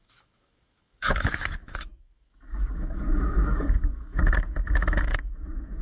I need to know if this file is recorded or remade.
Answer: remade